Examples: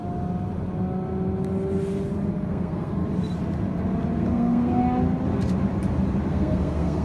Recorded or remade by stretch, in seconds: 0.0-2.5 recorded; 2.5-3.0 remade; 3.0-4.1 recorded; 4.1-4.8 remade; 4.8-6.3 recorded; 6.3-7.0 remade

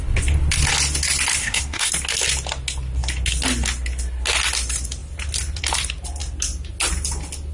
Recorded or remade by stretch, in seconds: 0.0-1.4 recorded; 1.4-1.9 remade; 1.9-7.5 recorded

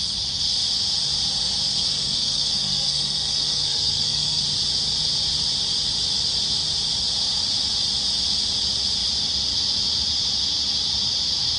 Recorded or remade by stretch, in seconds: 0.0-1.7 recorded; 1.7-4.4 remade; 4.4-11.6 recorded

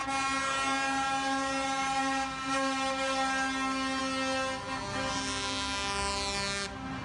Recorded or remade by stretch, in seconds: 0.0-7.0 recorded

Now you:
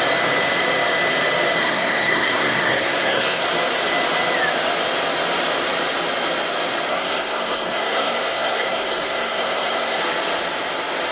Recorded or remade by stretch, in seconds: 0.0-1.6 recorded; 1.6-3.4 remade; 3.4-6.9 recorded; 6.9-10.0 remade; 10.0-11.1 recorded